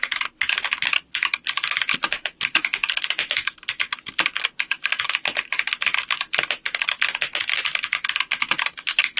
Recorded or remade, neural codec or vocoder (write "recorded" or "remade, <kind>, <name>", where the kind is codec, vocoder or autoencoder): recorded